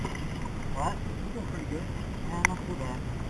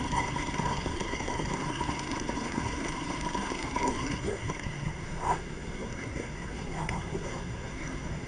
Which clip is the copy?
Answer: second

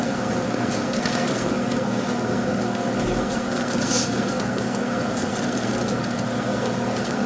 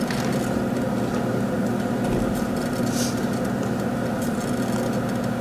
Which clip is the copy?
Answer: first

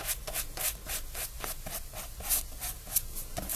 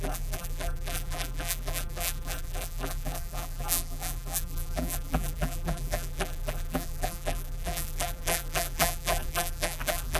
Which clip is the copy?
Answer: second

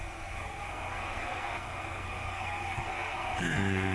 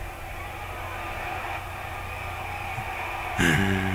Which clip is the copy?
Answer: first